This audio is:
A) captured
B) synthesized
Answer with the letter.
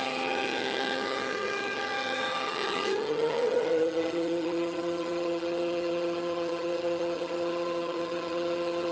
B